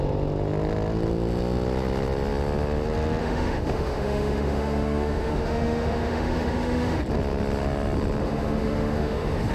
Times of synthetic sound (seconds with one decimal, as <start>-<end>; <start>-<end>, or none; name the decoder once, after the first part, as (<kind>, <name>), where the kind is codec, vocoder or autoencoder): 3.2-7.0 (autoencoder, DAC-VAE); 8.2-9.5

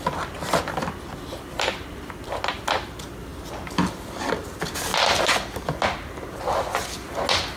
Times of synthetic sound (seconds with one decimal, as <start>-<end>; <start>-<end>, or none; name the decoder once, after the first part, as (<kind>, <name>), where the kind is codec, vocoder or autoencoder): none

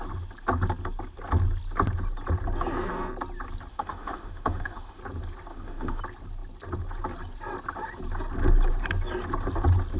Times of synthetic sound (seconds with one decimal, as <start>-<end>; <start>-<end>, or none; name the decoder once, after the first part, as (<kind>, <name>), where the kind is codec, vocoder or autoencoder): 3.7-5.0 (autoencoder, DAC-VAE); 5.5-6.0